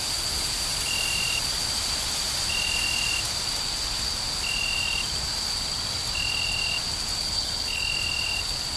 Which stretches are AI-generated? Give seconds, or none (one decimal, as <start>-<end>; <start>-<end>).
7.2-7.9